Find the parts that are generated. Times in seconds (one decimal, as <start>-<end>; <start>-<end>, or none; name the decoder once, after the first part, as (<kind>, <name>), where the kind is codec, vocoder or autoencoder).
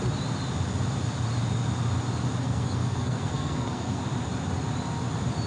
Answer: 2.4-4.0 (codec, SNAC)